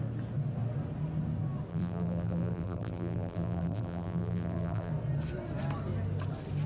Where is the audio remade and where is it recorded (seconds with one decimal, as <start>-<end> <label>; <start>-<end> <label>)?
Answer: 0.0-1.7 recorded; 1.7-4.9 remade; 4.9-6.7 recorded